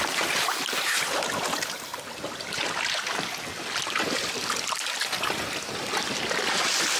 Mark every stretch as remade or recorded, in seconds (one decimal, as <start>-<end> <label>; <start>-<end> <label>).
0.0-7.0 recorded